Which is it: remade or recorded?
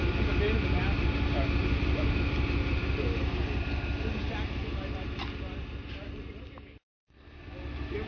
recorded